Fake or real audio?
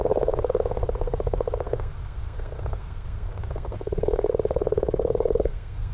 fake